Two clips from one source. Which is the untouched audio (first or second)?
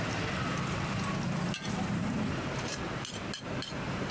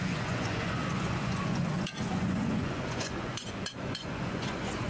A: first